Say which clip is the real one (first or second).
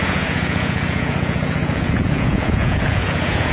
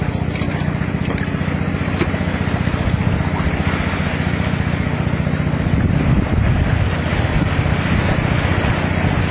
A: second